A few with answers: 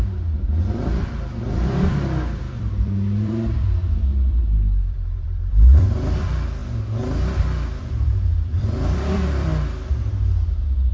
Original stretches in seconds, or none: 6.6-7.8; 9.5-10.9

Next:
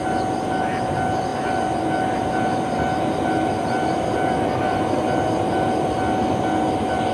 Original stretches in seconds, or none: 0.0-7.1

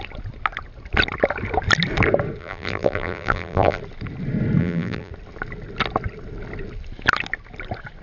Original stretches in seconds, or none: 0.0-2.4; 3.8-4.6; 5.1-8.0